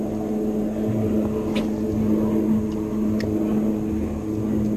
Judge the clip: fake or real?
real